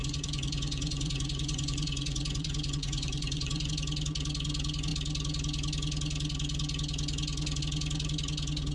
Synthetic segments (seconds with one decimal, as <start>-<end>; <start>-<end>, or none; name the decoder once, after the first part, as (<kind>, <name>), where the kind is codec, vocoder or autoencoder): 0.0-3.7 (vocoder, Vocos)